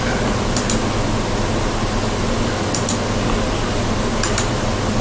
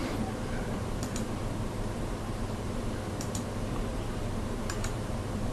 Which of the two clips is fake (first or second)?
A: second